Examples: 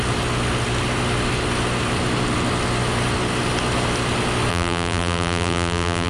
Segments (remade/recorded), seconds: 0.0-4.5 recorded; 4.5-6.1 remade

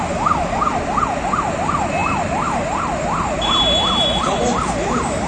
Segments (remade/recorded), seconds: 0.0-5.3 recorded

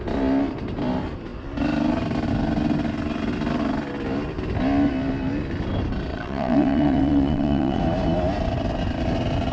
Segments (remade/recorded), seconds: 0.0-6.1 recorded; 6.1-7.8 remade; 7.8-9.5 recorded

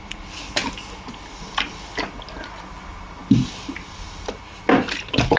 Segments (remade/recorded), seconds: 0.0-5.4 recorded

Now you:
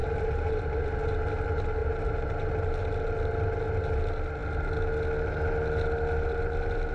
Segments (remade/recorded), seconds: 0.0-0.9 remade; 0.9-1.8 recorded; 1.8-2.8 remade; 2.8-6.9 recorded

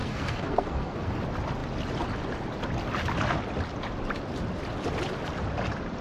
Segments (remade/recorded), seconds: 0.0-1.1 remade; 1.1-6.0 recorded

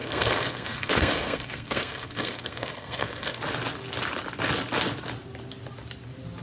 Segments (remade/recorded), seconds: 0.0-3.4 remade; 3.4-6.4 recorded